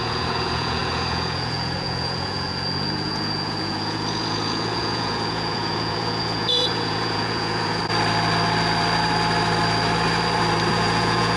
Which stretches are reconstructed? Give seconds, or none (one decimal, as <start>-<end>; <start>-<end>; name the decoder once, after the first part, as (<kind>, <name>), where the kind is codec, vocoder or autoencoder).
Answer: 0.0-7.8 (vocoder, Vocos); 10.7-11.4